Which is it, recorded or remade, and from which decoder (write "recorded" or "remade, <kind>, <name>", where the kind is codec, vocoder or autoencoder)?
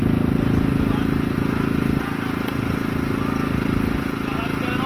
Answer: recorded